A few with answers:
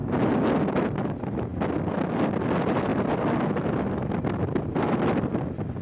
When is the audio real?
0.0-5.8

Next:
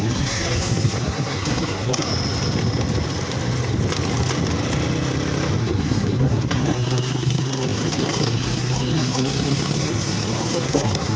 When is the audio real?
2.1-5.6

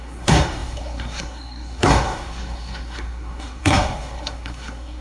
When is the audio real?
none

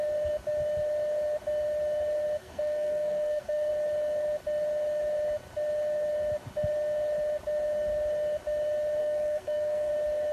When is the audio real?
0.0-2.4; 3.7-9.0; 9.9-10.3

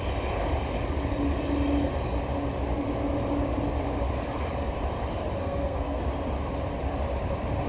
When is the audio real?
0.0-5.4; 6.0-7.7